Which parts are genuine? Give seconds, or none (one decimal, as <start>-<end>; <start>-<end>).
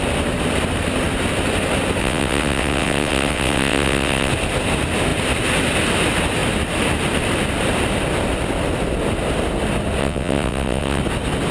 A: 0.0-2.0; 4.3-10.0; 11.0-11.5